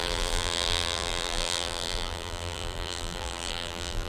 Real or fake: fake